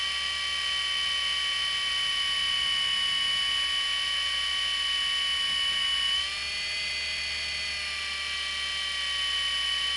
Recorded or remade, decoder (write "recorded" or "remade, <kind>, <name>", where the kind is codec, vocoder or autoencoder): recorded